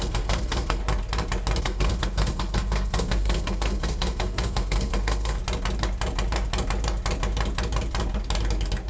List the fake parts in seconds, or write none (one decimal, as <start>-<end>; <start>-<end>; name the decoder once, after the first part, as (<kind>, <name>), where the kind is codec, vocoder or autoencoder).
0.0-0.8 (codec, SNAC); 1.6-5.4